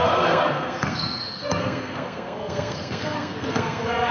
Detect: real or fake fake